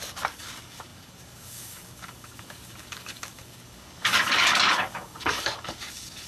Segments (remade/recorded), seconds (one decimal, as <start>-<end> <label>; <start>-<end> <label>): 0.0-6.3 remade